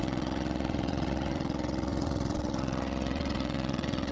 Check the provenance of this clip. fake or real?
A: fake